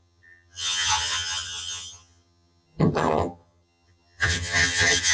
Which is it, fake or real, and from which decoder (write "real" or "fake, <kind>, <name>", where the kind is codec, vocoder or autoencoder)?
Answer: fake, vocoder, HiFi-GAN